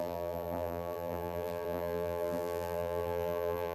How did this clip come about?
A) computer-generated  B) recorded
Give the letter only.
A